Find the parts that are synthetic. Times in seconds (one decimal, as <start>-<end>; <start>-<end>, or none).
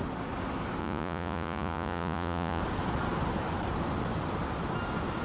0.8-2.6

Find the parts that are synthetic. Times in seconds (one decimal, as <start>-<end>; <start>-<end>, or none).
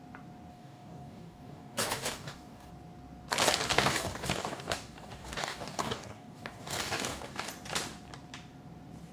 0.5-2.7; 3.7-7.5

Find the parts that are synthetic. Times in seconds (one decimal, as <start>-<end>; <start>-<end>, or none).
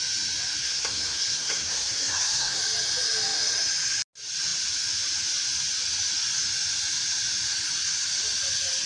0.6-2.6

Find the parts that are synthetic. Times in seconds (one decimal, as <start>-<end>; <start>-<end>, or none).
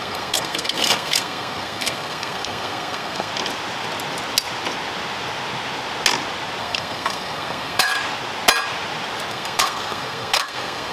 0.0-3.3; 6.6-7.9; 9.3-10.9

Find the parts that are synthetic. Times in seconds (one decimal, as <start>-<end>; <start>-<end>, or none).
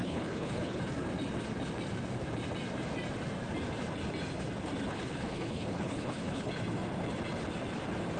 0.0-0.8; 4.9-6.5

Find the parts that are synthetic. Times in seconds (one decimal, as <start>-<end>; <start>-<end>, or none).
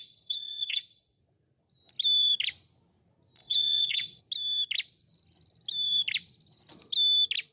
0.0-1.2; 3.4-4.2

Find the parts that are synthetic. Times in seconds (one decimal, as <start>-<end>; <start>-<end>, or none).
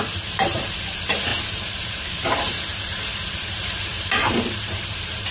0.0-5.3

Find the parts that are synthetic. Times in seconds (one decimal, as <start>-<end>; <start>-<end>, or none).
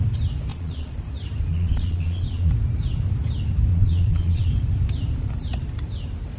0.5-1.0; 1.5-2.5; 3.7-4.5